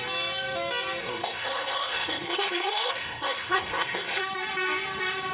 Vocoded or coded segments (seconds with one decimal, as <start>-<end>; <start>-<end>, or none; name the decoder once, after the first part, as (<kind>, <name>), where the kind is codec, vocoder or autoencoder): 1.0-4.2 (codec, SNAC)